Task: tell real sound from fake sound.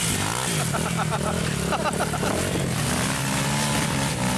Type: real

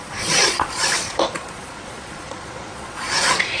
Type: fake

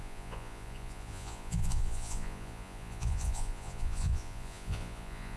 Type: fake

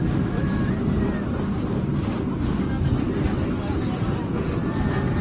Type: real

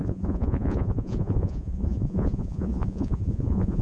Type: fake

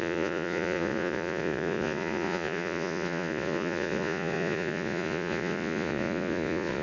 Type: fake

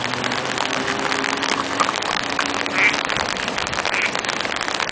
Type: real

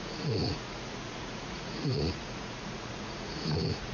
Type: fake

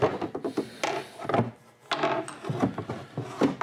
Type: real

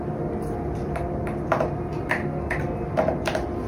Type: real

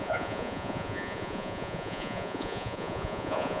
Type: fake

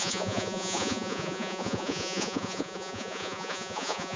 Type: fake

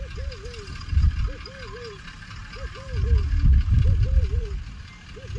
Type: real